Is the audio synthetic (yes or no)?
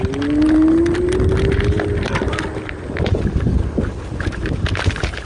no